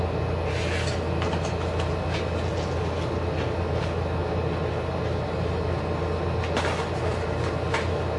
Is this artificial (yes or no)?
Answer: no